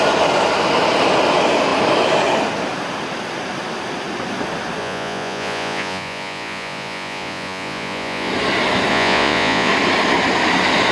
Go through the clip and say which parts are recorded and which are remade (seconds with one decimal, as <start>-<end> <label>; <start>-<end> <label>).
0.0-4.8 recorded; 4.8-8.3 remade; 8.3-8.9 recorded; 8.9-9.7 remade; 9.7-10.9 recorded